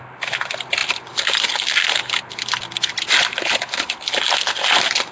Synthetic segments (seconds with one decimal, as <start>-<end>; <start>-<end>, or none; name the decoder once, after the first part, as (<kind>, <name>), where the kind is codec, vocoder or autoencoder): none